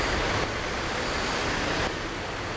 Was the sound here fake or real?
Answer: real